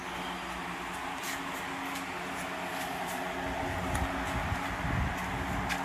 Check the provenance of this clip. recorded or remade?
recorded